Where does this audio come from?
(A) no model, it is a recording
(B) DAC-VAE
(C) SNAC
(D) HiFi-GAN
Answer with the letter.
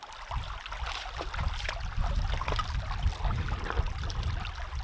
A